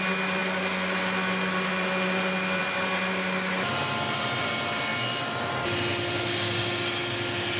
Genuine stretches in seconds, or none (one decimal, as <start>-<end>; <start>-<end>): 0.0-7.6